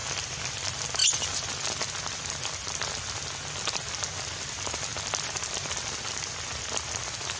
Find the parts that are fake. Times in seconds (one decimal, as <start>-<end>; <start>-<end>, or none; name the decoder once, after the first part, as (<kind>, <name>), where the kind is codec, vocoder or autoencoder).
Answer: none